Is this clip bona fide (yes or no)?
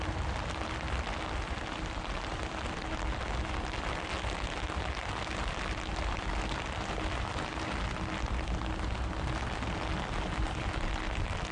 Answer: yes